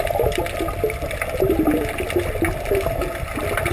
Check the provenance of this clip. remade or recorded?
recorded